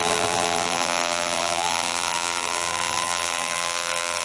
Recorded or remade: remade